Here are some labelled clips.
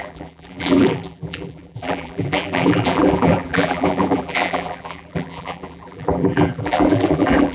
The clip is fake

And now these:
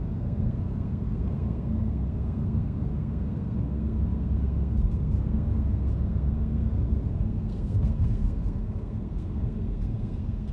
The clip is fake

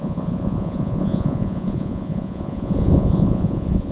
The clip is fake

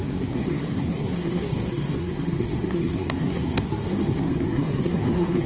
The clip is fake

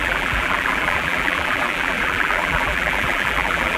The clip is fake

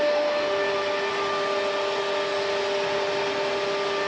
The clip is real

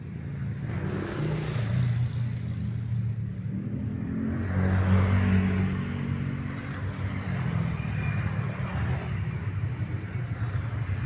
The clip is real